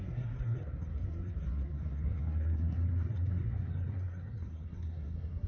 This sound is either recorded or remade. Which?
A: remade